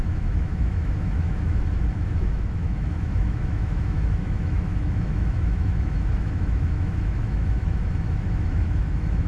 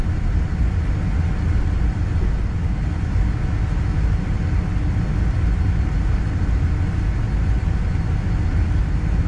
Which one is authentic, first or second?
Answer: second